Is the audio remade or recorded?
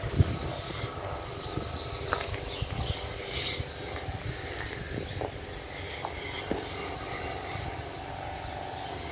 recorded